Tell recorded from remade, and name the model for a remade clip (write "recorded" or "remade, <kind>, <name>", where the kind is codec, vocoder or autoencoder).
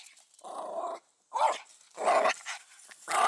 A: recorded